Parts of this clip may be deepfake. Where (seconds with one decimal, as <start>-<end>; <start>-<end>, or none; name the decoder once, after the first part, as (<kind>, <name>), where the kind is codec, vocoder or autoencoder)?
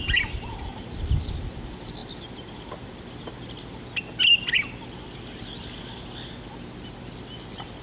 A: none